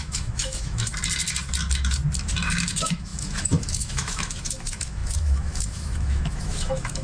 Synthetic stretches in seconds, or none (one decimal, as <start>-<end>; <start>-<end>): 0.0-0.9; 2.7-7.0